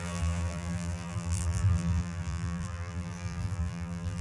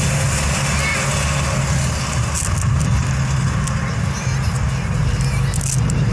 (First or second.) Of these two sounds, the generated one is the first